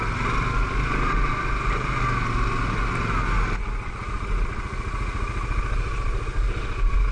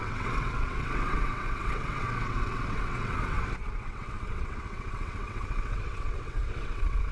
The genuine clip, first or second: first